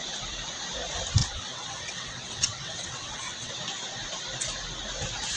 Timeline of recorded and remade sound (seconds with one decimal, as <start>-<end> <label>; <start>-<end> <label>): 0.0-1.2 recorded; 1.2-3.5 remade; 3.5-5.4 recorded

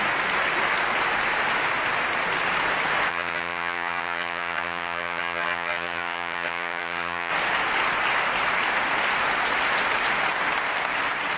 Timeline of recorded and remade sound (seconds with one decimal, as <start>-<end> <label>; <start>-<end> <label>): 0.0-3.1 recorded; 3.1-7.3 remade; 7.3-11.4 recorded

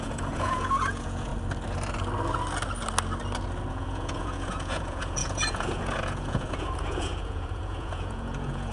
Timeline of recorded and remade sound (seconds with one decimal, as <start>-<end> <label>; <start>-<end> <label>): 0.0-1.3 remade; 1.3-3.7 recorded; 3.7-8.7 remade

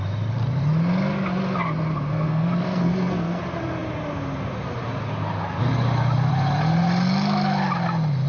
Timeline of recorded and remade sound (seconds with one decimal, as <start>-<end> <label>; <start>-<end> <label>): 0.0-2.1 recorded; 2.1-3.4 remade; 3.4-8.3 recorded

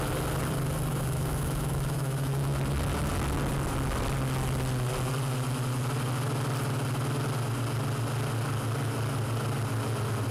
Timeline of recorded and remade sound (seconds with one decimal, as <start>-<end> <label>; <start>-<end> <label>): 0.0-0.9 recorded; 0.9-2.6 remade; 2.6-10.3 recorded

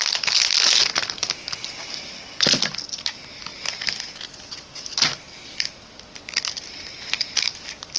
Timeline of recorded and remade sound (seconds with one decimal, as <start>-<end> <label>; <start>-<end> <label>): 0.0-8.0 recorded